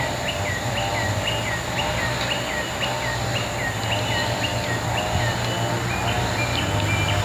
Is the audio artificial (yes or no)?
no